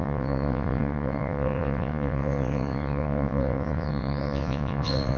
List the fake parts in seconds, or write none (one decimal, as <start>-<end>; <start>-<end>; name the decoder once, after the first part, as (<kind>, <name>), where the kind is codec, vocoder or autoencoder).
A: 0.0-5.2 (vocoder, WaveNeXt)